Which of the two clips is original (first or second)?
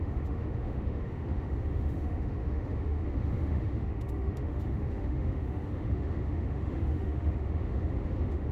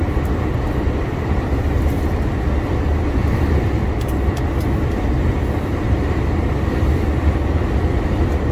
second